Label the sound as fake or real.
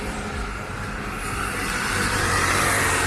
fake